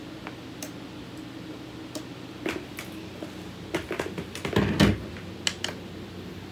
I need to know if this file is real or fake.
real